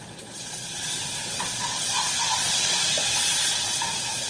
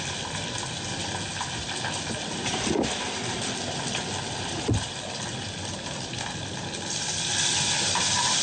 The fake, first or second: first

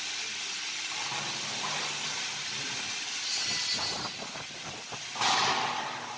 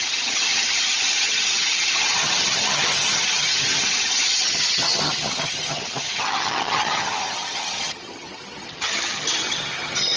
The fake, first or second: second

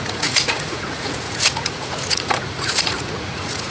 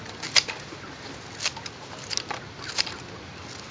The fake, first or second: first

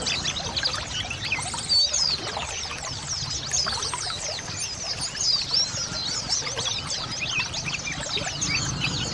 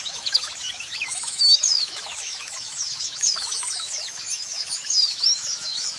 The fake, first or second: second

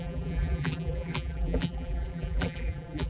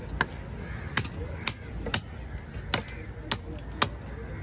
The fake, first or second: first